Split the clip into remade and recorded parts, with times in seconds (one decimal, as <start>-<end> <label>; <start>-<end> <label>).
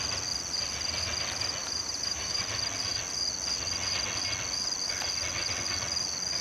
0.0-1.6 recorded; 1.6-2.4 remade; 2.4-6.4 recorded